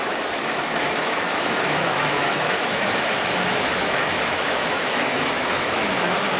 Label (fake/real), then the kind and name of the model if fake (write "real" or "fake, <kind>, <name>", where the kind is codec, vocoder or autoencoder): fake, autoencoder, DAC-VAE